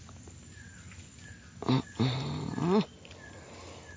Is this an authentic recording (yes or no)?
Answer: yes